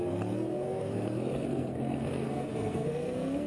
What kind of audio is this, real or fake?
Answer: fake